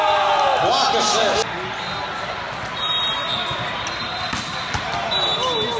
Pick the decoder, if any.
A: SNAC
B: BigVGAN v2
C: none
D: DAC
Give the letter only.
C